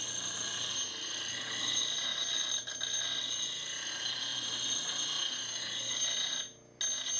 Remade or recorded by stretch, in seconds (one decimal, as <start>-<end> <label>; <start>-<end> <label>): 0.0-7.2 recorded